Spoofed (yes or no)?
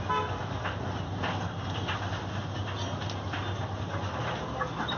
no